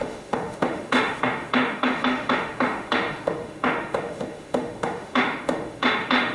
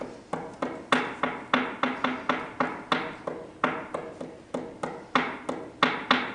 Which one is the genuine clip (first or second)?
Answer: second